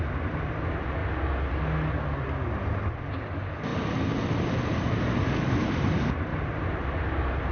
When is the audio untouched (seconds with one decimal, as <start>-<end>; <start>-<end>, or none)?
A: 0.0-6.3